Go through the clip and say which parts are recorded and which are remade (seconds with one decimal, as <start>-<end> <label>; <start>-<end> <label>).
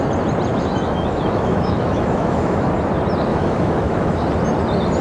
0.0-0.5 recorded; 0.5-2.7 remade; 2.7-3.3 recorded; 3.3-4.2 remade; 4.2-5.0 recorded